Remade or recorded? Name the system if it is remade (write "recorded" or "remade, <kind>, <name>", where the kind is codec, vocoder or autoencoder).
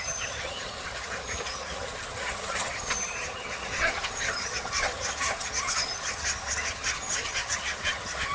remade, vocoder, HiFi-GAN